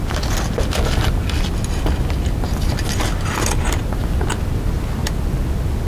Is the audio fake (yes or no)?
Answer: no